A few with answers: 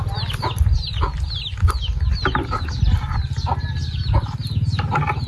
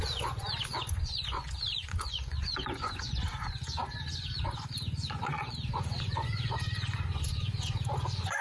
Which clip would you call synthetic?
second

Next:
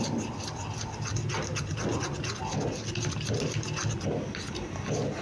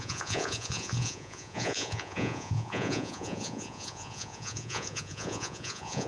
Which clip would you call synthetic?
second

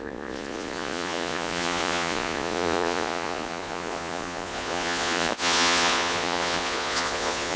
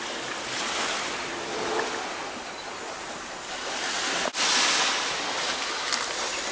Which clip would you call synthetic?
first